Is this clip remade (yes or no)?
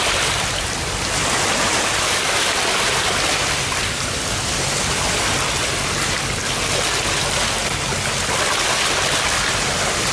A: no